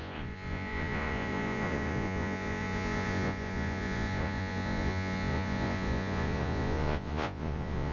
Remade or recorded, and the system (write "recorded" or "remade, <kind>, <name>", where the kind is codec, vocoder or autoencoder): remade, vocoder, Vocos